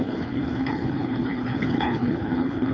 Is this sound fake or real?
fake